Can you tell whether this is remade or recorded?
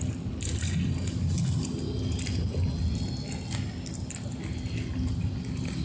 recorded